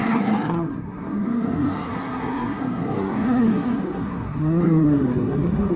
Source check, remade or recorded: remade